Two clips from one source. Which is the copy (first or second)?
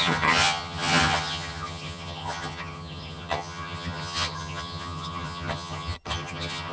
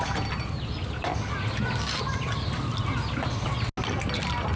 first